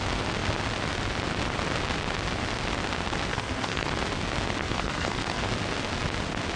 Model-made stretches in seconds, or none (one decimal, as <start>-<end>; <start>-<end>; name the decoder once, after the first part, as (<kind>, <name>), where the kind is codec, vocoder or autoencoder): 3.3-3.9 (codec, SNAC); 4.6-5.5